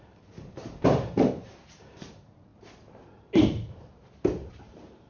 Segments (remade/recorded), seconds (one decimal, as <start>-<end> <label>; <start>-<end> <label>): 0.0-1.3 remade; 1.3-1.8 recorded; 1.8-2.5 remade; 2.5-4.5 recorded; 4.5-5.1 remade